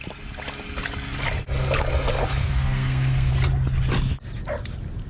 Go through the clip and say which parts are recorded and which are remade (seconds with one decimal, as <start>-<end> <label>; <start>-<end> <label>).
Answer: 0.0-2.4 recorded; 2.4-3.3 remade; 3.3-5.1 recorded